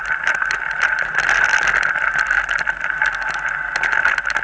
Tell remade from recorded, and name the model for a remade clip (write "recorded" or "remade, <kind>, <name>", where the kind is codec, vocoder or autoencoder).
recorded